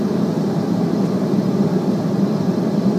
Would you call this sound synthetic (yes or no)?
yes